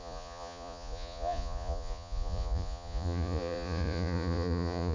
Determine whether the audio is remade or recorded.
remade